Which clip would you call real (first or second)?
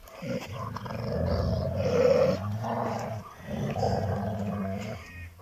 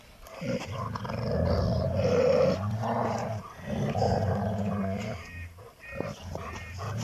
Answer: first